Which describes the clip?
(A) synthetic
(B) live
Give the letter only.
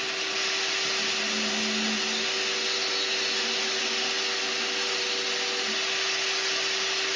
B